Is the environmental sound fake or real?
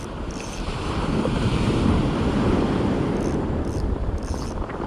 fake